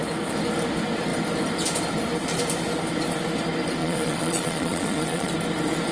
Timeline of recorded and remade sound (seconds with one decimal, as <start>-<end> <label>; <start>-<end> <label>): 0.0-3.8 recorded; 3.8-5.3 remade; 5.3-5.9 recorded